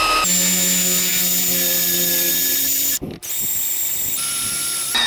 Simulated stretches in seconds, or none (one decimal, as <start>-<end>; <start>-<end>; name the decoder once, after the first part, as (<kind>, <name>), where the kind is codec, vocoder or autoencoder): none